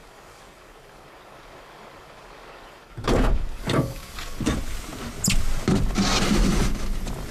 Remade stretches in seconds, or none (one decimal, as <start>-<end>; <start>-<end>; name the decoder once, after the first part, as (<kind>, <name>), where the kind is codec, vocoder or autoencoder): 0.0-4.4 (codec, DAC)